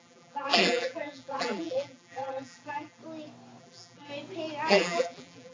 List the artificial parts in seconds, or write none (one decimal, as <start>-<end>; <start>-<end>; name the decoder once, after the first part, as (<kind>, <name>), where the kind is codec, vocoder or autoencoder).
0.0-3.0 (vocoder, BigVGAN v2); 3.6-4.1; 4.7-5.5